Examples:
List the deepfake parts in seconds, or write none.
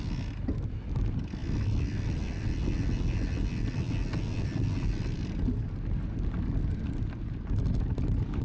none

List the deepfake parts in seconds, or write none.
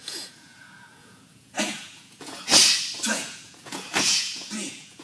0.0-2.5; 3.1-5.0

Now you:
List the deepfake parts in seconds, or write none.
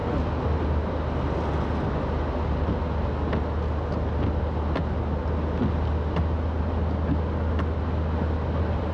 none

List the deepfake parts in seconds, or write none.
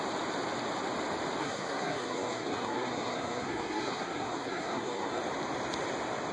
1.4-5.2